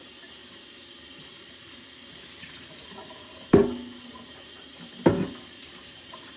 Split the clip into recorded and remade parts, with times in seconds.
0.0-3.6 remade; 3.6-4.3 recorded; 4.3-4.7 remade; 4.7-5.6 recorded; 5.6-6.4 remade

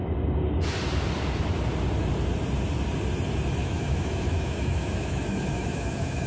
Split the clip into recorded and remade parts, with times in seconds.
0.0-3.6 recorded; 3.6-6.3 remade

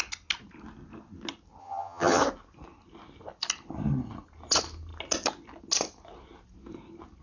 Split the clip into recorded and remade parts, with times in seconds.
0.0-1.6 recorded; 1.6-2.2 remade; 2.2-7.2 recorded

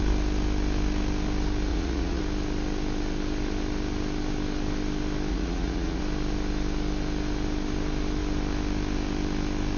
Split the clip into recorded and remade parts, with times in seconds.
0.0-1.7 recorded; 1.7-2.2 remade; 2.2-5.3 recorded; 5.3-6.0 remade; 6.0-9.8 recorded

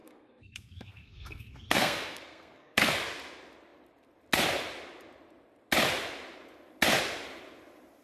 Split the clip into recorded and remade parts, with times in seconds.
0.0-2.9 remade; 2.9-8.0 recorded

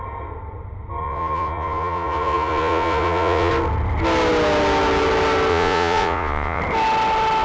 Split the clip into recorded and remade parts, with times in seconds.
0.0-1.0 recorded; 1.0-3.5 remade; 3.5-5.5 recorded; 5.5-6.6 remade; 6.6-7.4 recorded